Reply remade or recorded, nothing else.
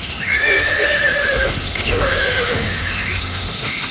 remade